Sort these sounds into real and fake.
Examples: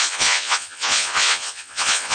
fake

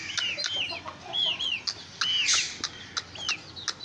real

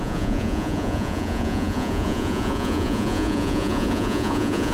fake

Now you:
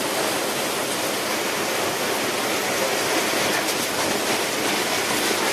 real